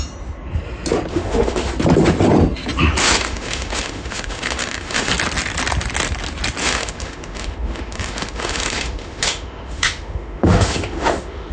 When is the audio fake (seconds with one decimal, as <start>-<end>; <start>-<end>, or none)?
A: 1.1-1.7; 3.0-5.1; 6.6-11.5